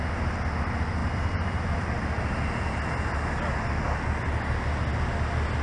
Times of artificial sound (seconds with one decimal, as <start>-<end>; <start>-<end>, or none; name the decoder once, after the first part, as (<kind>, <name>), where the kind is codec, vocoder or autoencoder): none